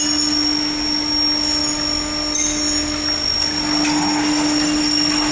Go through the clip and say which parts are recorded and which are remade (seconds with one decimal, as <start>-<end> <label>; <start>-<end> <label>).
0.0-5.3 recorded